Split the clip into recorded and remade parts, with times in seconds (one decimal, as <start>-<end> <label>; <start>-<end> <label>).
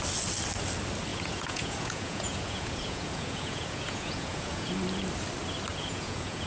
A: 0.0-1.1 recorded; 1.1-4.7 remade; 4.7-5.7 recorded; 5.7-6.5 remade